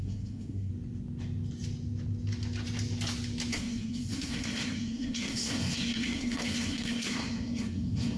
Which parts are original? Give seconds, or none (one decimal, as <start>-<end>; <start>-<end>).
0.7-3.5